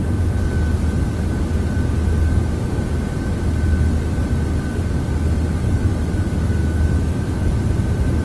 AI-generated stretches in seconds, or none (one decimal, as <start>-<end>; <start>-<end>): 6.6-7.4